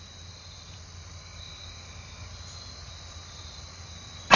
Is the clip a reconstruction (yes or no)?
no